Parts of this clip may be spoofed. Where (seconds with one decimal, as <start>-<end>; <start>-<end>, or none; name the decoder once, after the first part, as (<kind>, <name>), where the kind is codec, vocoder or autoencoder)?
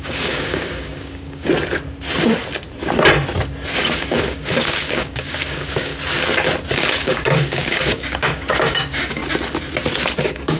0.0-1.5 (codec, DAC); 3.8-5.9; 6.9-9.2; 10.2-10.6